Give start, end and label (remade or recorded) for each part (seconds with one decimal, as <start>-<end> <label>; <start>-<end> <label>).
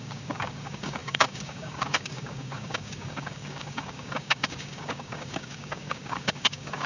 0.0-6.9 remade